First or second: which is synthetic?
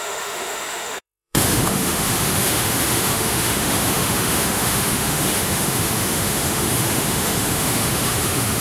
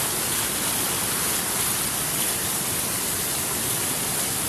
first